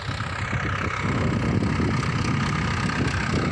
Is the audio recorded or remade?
recorded